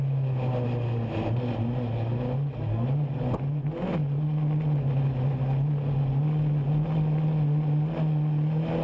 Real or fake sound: real